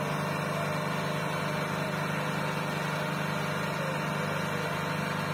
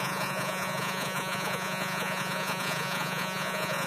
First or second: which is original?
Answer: first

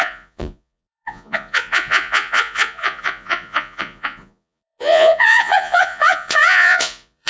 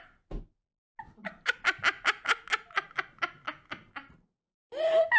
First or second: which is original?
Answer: second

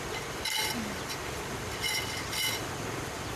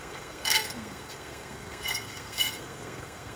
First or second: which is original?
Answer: first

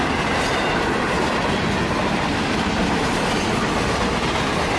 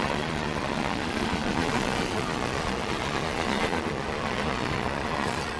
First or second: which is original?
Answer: first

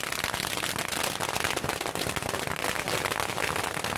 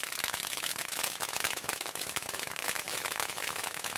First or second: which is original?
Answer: first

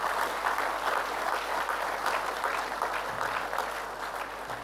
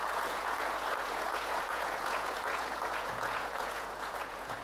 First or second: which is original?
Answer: first